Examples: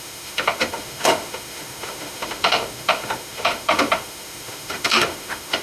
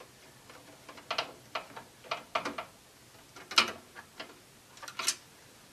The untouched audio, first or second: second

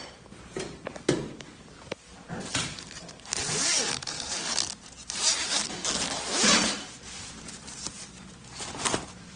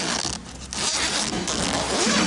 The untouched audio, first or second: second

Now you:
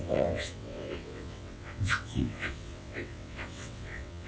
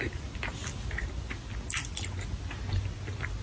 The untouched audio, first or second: second